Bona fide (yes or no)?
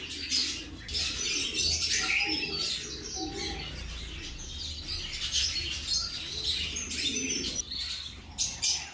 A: yes